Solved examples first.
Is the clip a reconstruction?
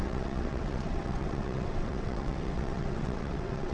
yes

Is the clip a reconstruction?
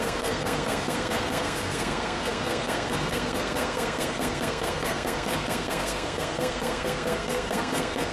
yes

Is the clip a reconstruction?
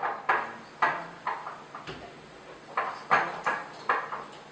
no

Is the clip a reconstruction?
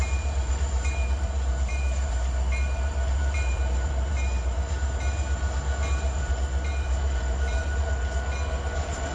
yes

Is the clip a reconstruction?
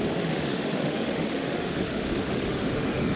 yes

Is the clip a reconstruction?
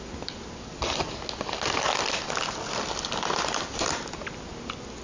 no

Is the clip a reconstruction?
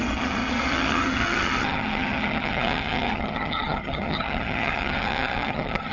yes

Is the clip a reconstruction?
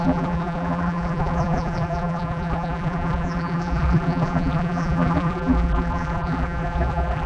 yes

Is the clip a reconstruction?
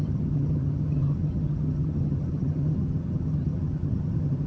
yes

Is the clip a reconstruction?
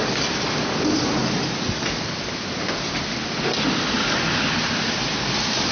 no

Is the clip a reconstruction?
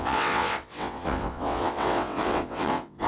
yes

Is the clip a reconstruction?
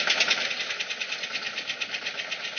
no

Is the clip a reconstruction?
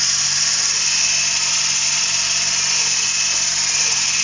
no